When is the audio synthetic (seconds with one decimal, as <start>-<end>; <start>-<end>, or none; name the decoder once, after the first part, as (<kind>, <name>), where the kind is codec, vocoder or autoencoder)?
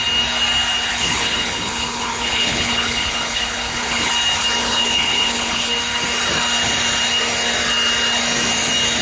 0.9-4.1 (codec, HILCodec); 4.6-5.7